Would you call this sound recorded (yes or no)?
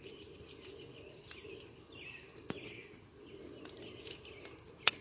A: yes